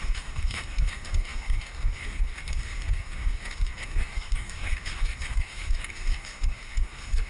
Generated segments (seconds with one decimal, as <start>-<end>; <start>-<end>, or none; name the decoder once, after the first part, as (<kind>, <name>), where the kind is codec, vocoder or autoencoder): 0.0-7.3 (codec, DAC)